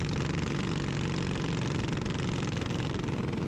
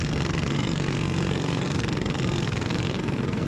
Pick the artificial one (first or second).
second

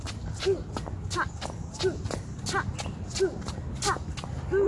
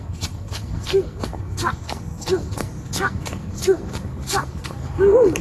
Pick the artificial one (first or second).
second